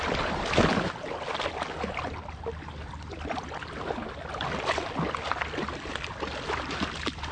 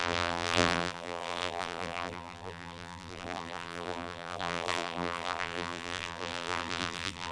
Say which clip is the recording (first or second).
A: first